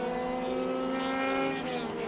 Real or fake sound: real